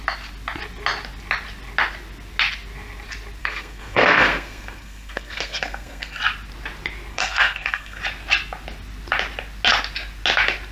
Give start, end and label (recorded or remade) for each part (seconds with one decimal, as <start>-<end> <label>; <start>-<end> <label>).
0.0-3.4 recorded; 3.4-6.2 remade; 6.2-7.1 recorded; 7.1-8.0 remade; 8.0-10.7 recorded